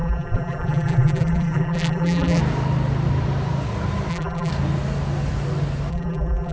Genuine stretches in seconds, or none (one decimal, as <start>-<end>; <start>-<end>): 2.4-4.1; 4.5-5.9